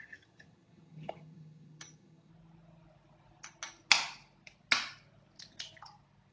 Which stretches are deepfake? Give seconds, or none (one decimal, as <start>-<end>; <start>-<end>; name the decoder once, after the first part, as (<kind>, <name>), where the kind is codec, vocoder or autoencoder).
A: 0.0-2.3 (vocoder, HiFi-GAN)